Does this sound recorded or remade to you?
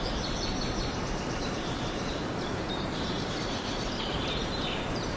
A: remade